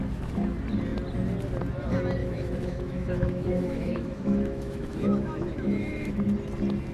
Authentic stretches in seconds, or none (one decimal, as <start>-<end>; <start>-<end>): 0.0-2.2; 6.1-6.9